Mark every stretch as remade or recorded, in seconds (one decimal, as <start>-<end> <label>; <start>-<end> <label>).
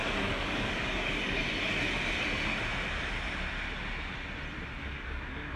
0.0-1.4 remade; 1.4-4.8 recorded; 4.8-5.6 remade